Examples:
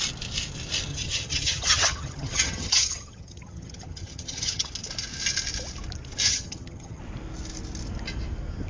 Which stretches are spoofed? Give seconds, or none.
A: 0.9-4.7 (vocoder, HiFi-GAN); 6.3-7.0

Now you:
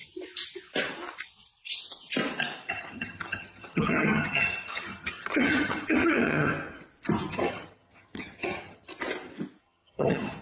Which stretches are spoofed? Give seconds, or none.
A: 2.7-6.5 (vocoder, HiFi-GAN); 7.3-8.9; 9.6-10.4

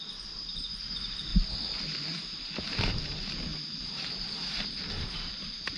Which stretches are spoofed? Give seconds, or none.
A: 0.0-1.3 (vocoder, BigVGAN v2); 2.8-5.8

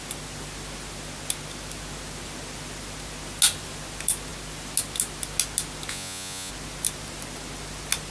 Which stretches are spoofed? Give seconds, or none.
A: 5.9-6.5 (vocoder, Vocos)

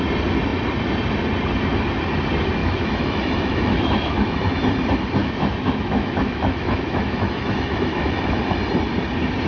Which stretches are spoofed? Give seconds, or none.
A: 2.6-4.6 (autoencoder, DAC-VAE); 5.2-8.4

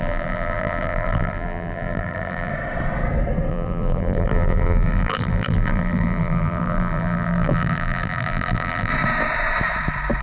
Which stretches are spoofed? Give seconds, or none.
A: 0.0-2.5 (vocoder, BigVGAN v2); 3.5-8.9

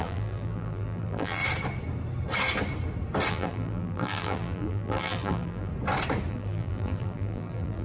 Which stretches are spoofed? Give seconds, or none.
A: 0.0-1.4 (vocoder, BigVGAN v2); 3.3-5.7; 6.3-7.8

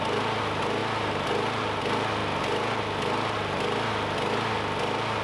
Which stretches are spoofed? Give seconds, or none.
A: none